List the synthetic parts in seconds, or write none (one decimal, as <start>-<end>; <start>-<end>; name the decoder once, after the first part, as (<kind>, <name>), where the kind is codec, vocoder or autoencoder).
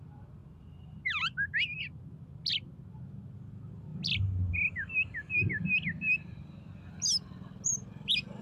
none